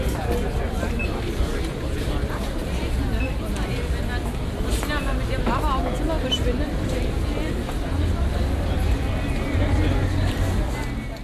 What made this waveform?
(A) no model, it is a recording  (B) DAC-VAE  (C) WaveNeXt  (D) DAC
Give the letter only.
A